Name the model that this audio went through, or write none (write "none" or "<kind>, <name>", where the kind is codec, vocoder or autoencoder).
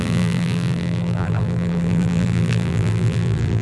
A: vocoder, BigVGAN v2